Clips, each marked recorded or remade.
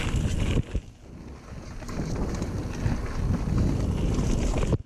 recorded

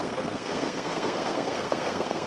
remade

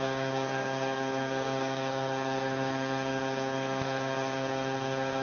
remade